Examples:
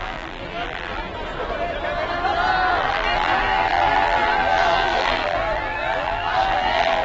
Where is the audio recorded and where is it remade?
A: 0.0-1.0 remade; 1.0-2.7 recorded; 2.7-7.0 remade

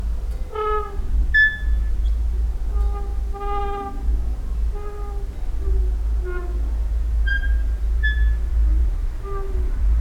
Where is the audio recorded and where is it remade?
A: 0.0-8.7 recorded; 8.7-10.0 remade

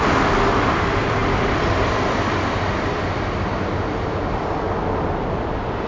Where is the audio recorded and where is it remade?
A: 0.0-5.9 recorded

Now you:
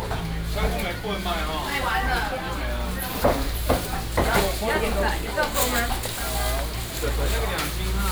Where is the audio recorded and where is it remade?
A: 0.0-3.1 recorded; 3.1-3.7 remade; 3.7-8.1 recorded

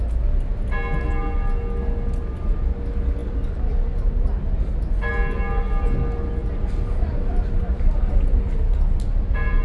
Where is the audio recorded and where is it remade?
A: 0.0-6.4 recorded; 6.4-8.1 remade; 8.1-9.6 recorded

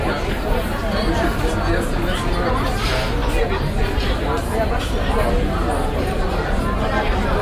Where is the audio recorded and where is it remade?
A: 0.0-0.8 recorded; 0.8-1.4 remade; 1.4-7.4 recorded